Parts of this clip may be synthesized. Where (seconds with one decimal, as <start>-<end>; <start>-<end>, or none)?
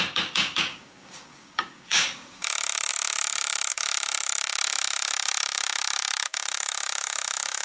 0.0-7.6